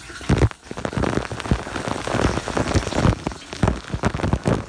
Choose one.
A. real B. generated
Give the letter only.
A